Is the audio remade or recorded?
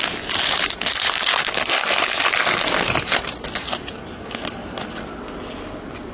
recorded